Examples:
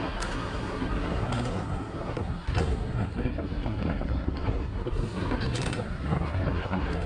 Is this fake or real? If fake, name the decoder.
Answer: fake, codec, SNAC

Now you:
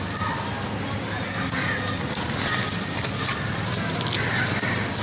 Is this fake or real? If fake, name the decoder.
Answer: real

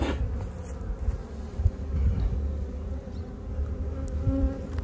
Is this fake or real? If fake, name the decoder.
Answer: real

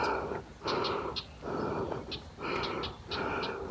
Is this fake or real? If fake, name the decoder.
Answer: real